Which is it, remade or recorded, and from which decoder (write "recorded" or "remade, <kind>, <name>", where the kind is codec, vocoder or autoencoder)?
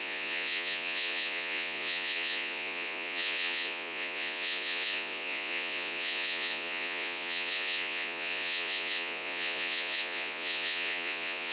remade, vocoder, Vocos